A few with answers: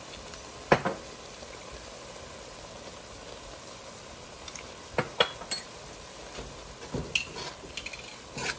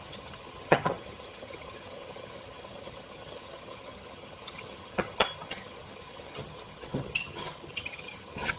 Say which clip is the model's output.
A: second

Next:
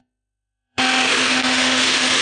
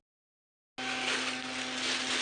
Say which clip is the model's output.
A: first